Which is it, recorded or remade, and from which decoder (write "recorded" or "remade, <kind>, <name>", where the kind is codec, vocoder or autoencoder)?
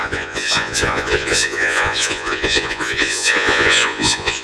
remade, vocoder, Vocos